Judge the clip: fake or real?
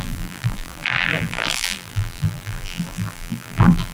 fake